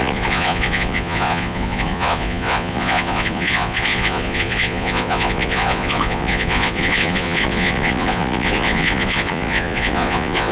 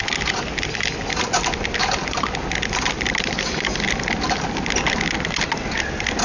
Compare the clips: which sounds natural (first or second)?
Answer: second